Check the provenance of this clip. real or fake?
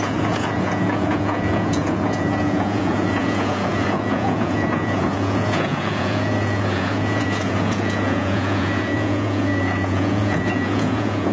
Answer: fake